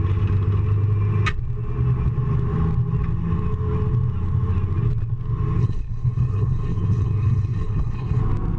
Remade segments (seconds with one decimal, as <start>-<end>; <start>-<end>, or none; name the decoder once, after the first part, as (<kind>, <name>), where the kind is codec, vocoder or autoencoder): 5.6-8.2 (codec, HILCodec)